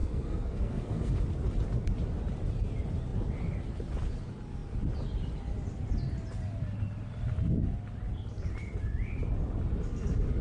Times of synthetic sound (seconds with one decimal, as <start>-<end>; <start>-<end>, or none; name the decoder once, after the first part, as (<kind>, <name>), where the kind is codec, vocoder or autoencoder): 0.0-1.2 (codec, SNAC)